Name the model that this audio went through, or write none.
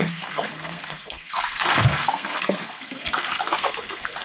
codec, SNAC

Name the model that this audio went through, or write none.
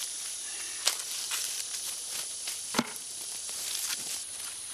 none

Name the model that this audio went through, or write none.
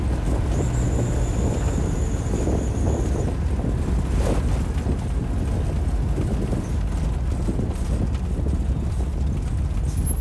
none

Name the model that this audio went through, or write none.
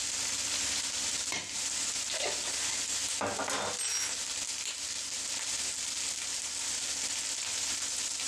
none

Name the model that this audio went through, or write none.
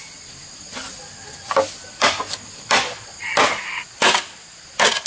none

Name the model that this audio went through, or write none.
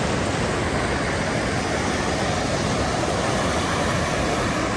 none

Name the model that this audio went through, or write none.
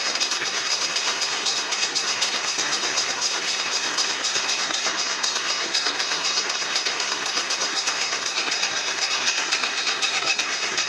codec, SNAC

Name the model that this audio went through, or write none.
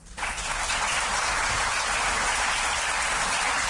none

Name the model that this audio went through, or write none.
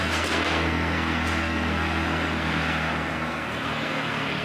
codec, SNAC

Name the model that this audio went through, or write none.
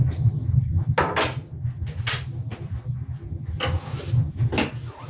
none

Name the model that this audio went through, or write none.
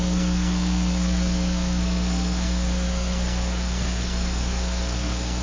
codec, SNAC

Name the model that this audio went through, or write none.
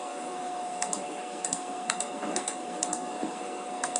codec, SNAC